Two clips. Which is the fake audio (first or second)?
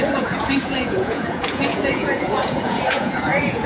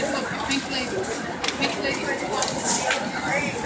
first